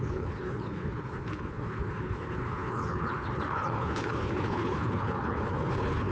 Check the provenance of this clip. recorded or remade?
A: remade